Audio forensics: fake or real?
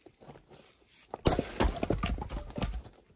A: real